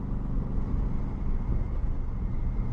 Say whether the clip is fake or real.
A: real